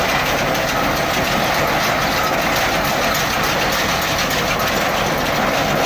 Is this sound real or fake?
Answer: real